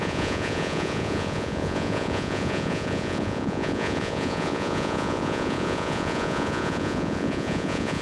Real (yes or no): no